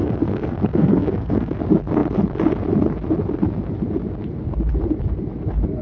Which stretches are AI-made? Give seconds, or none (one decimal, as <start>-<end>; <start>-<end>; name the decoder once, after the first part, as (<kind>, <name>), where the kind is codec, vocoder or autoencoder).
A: 0.0-1.6 (codec, SNAC)